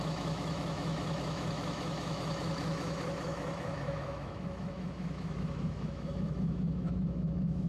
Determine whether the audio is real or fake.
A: fake